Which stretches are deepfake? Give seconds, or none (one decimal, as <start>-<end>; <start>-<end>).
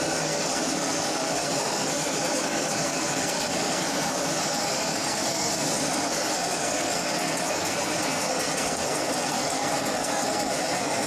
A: 0.0-11.1